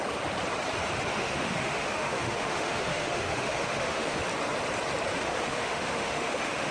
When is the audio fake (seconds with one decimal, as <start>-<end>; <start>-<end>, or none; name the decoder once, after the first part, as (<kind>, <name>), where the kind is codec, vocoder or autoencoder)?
1.1-4.2 (autoencoder, DAC-VAE); 5.2-6.7